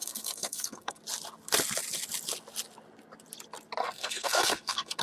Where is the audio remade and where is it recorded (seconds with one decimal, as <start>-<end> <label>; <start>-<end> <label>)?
0.0-1.0 remade; 1.0-3.8 recorded; 3.8-5.0 remade